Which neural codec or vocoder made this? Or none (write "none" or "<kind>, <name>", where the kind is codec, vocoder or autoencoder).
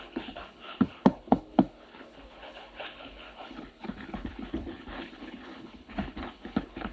codec, HILCodec